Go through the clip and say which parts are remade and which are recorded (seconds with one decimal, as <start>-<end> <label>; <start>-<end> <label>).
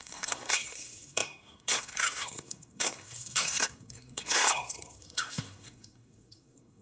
0.0-6.8 remade